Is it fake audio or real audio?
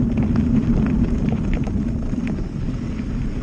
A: fake